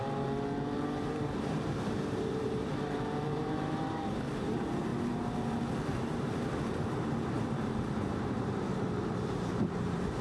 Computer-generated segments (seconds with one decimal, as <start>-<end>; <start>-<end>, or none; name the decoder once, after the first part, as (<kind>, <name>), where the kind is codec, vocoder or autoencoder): 0.0-4.9 (vocoder, BigVGAN v2); 7.0-10.2